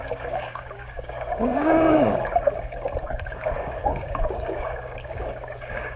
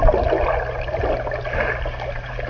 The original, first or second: second